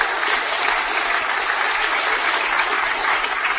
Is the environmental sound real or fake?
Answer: real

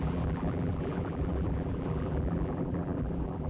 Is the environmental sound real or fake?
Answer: fake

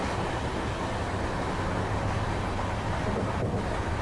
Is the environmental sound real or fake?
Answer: real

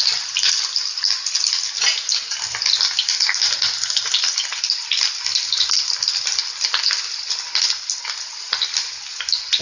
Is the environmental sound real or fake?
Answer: real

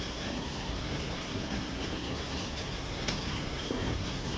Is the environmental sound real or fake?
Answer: fake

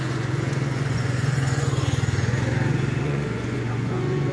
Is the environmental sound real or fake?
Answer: fake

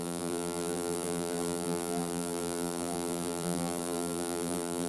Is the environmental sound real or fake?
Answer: fake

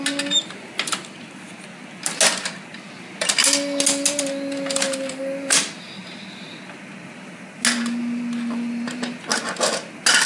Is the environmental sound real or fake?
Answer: real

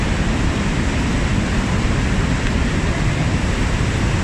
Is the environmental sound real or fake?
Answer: fake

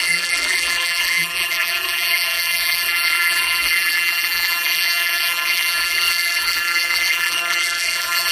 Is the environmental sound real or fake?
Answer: fake